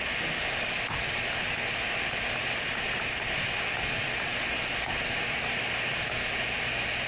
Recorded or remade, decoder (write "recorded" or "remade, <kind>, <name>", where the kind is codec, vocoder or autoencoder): recorded